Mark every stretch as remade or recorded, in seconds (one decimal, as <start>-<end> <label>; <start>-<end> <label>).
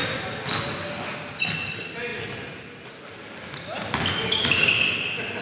0.0-5.4 recorded